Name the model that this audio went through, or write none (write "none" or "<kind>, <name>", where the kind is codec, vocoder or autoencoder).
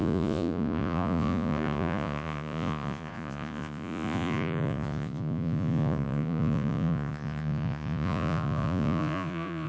vocoder, Vocos